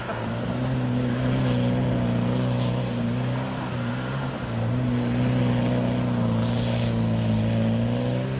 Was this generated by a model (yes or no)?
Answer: no